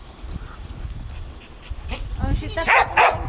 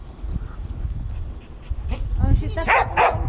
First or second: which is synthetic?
first